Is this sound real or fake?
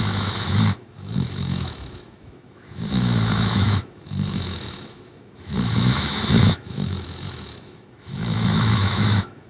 fake